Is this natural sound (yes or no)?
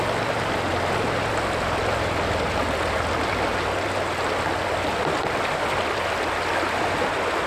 yes